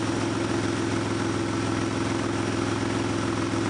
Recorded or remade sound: recorded